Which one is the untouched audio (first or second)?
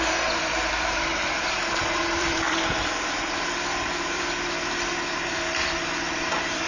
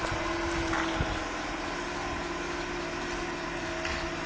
second